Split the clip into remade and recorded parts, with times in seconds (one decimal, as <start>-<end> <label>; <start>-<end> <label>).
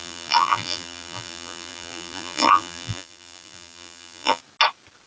0.0-4.4 remade; 4.4-5.1 recorded